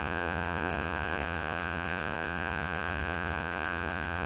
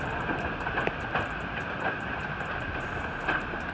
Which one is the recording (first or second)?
second